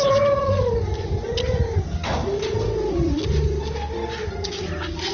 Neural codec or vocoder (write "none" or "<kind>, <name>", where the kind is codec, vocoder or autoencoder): none